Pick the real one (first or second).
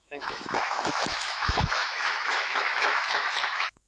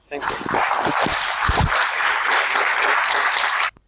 second